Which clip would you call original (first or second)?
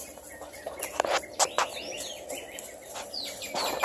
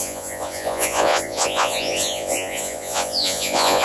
first